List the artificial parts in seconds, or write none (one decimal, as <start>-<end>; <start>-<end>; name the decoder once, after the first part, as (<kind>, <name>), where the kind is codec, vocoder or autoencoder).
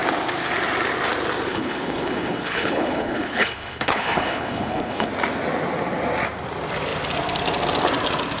1.5-5.1 (codec, HILCodec)